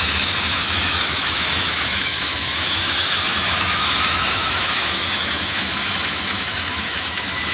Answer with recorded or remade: remade